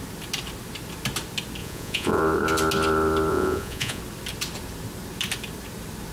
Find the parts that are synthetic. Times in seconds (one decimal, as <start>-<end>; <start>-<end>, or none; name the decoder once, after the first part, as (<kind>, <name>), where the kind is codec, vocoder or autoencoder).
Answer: 1.6-2.2 (vocoder, Vocos); 3.3-4.0

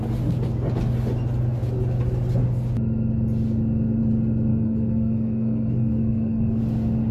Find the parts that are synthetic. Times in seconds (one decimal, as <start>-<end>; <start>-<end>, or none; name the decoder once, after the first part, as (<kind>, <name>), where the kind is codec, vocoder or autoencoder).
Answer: 4.5-6.6 (codec, SNAC)

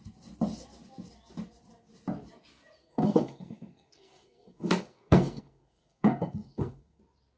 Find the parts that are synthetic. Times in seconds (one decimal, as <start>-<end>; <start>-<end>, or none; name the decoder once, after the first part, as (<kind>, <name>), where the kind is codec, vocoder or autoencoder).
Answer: 2.8-7.0 (codec, SNAC)

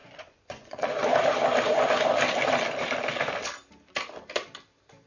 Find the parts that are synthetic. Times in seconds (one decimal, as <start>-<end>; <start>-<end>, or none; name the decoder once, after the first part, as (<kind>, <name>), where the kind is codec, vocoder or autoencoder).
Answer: 0.0-0.9 (vocoder, Vocos)

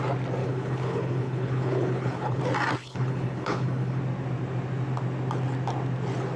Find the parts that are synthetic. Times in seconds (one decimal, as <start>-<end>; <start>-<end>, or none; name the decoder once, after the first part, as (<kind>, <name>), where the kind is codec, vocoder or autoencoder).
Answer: 0.4-2.4 (codec, HILCodec); 2.8-4.0